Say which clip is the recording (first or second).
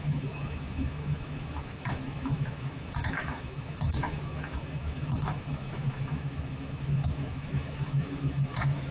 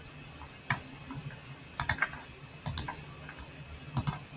second